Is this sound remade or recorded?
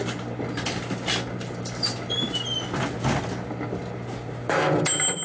recorded